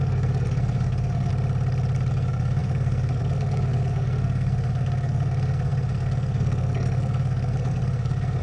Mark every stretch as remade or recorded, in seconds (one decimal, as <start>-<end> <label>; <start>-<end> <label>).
0.0-1.3 remade; 1.3-2.1 recorded; 2.1-8.4 remade